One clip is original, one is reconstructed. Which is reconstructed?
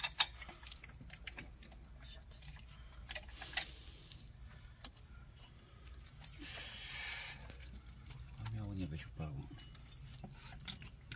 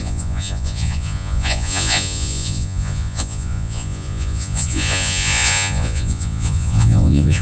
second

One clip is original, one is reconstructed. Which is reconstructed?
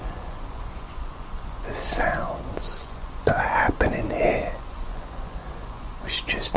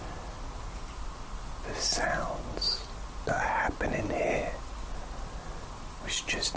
first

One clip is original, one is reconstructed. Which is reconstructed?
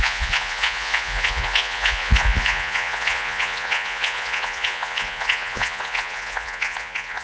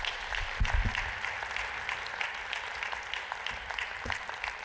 first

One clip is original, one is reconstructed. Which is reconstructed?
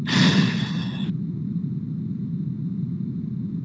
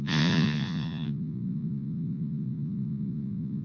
second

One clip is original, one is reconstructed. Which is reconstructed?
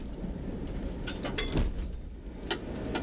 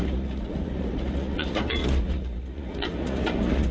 second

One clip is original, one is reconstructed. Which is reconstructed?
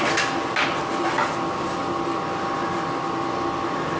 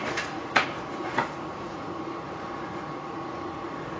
second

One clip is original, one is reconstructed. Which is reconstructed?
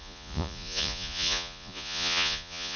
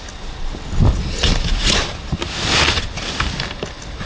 first